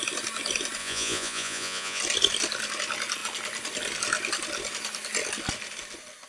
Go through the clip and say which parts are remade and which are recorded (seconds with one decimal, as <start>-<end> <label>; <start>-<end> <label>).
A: 0.0-0.8 recorded; 0.8-2.0 remade; 2.0-6.3 recorded